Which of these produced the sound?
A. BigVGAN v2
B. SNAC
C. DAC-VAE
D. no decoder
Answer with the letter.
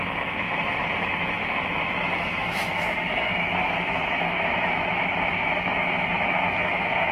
C